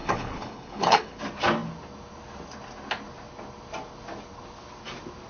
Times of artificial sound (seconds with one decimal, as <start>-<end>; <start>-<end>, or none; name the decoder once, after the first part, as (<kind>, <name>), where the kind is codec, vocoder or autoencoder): 0.0-1.2 (codec, HILCodec)